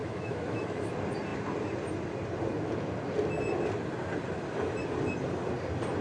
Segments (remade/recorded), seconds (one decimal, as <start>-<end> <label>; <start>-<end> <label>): 0.0-0.9 remade; 0.9-6.0 recorded